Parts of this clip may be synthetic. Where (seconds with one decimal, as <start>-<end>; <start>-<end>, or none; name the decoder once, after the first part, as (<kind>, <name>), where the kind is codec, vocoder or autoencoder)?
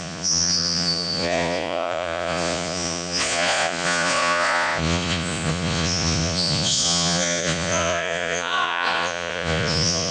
0.0-10.1 (vocoder, Vocos)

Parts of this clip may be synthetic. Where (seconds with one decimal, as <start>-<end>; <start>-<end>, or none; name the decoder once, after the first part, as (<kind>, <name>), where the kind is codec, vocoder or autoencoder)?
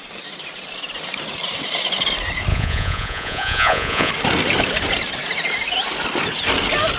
2.5-4.1 (vocoder, Vocos)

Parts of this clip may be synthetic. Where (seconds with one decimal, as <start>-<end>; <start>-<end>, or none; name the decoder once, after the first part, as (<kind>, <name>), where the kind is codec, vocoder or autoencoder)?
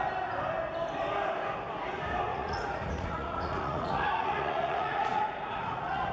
2.3-6.1 (vocoder, Vocos)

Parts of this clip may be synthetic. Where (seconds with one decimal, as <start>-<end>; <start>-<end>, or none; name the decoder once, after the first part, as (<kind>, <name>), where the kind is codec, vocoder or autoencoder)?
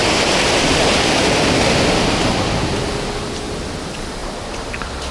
none